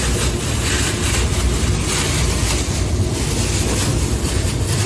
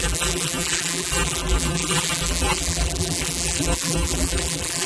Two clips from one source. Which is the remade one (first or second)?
second